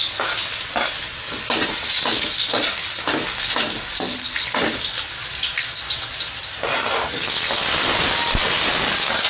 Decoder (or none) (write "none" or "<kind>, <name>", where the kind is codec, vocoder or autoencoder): none